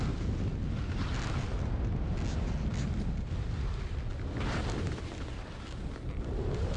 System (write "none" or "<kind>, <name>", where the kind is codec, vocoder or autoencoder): none